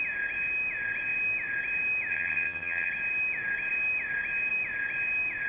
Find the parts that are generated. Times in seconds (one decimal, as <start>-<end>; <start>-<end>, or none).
2.1-2.9

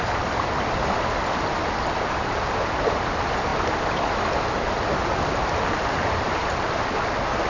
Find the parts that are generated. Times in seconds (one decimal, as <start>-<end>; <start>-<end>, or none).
none

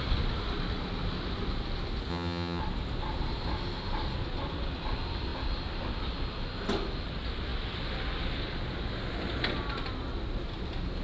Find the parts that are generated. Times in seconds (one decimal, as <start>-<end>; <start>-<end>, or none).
2.1-2.6

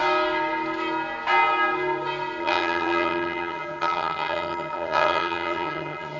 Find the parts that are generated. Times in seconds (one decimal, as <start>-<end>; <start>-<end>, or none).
2.4-6.2

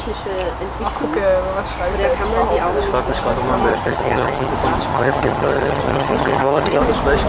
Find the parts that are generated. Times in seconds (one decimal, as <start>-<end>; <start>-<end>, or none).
3.7-4.5; 4.9-6.8

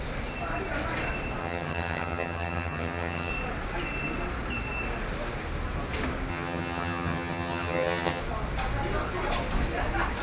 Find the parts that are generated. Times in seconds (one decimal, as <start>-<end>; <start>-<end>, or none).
1.4-3.3; 6.3-8.2

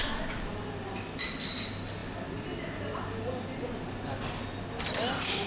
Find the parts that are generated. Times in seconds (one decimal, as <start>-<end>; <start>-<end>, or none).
none